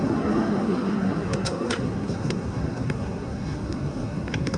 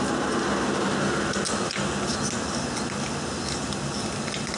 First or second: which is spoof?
first